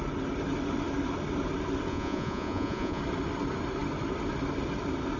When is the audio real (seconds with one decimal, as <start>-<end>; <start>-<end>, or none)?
0.0-1.9; 3.0-5.2